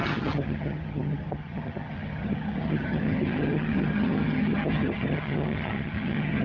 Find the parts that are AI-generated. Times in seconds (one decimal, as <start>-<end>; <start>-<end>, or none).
0.0-6.4